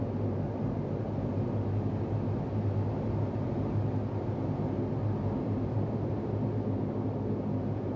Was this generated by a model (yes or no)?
no